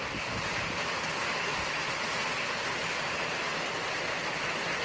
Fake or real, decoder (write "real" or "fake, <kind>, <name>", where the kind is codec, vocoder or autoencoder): real